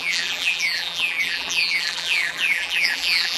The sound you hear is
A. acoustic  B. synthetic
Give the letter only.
B